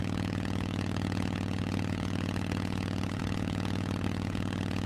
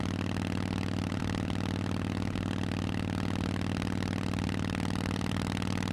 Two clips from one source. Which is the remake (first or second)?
first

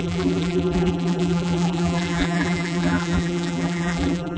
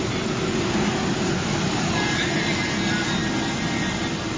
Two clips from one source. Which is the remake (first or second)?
first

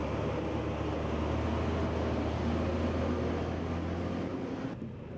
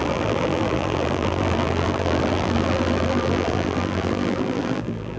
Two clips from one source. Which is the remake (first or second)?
second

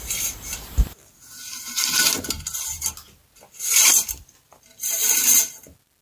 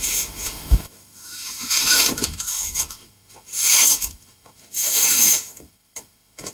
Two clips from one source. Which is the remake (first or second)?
second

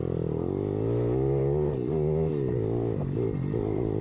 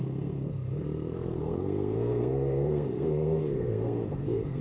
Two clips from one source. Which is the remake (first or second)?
second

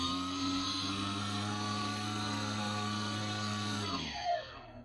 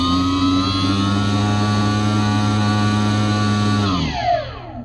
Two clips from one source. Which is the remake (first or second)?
first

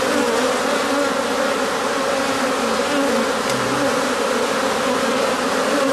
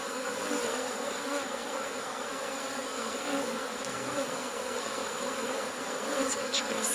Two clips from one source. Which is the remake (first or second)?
second